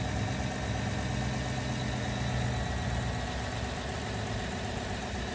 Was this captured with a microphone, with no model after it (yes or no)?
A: yes